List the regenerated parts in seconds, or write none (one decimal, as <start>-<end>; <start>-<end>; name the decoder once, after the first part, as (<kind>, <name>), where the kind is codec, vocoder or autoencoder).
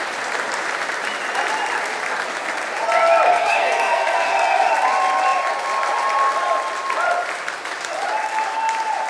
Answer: 3.3-4.3 (codec, SNAC)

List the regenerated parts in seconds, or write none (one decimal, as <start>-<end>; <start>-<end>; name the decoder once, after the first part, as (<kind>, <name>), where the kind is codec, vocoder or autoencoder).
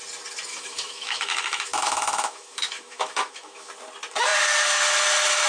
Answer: 0.5-3.7 (autoencoder, DAC-VAE)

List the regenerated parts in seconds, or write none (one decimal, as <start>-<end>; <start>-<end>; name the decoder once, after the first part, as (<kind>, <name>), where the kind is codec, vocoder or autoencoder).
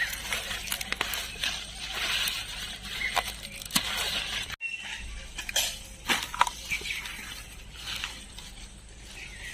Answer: none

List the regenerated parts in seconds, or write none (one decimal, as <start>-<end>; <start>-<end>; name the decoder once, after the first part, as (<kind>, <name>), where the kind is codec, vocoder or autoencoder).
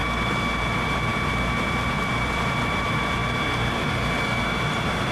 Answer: 0.6-3.2 (vocoder, BigVGAN v2); 4.6-5.1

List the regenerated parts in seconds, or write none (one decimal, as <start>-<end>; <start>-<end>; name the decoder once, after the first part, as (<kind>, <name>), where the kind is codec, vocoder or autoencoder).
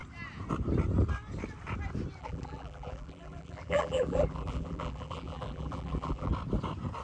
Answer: 2.2-6.3 (vocoder, BigVGAN v2)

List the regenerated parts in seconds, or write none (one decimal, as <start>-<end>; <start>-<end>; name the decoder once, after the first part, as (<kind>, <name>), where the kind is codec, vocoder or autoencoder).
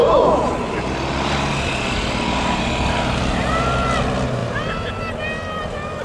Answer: none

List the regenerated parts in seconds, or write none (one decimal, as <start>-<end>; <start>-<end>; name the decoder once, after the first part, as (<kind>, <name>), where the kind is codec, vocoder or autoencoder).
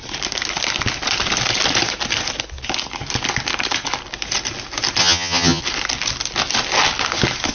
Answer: 5.0-5.6 (vocoder, HiFi-GAN)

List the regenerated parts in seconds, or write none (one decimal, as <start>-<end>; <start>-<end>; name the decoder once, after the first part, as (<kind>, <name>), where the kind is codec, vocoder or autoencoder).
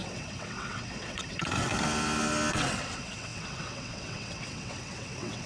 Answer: 0.0-1.7 (vocoder, WaveNeXt); 2.5-5.5